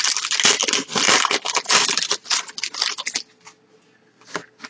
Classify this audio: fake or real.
real